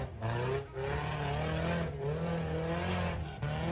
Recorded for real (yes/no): yes